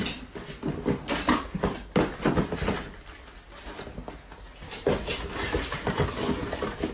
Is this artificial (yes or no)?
no